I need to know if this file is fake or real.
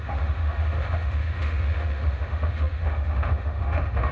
fake